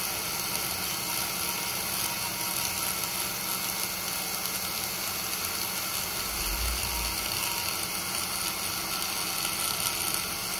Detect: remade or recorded recorded